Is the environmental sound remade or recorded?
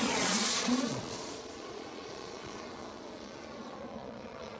remade